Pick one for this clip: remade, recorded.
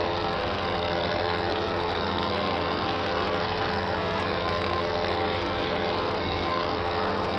remade